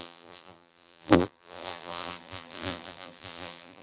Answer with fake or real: fake